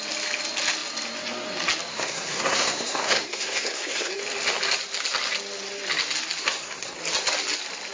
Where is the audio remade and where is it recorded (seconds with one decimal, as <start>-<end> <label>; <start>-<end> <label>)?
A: 0.0-1.9 recorded; 1.9-4.2 remade; 4.2-6.4 recorded; 6.4-7.0 remade; 7.0-7.9 recorded